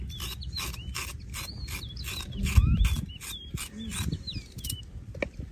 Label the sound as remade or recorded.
recorded